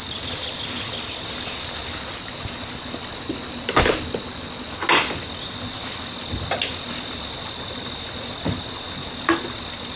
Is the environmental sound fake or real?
real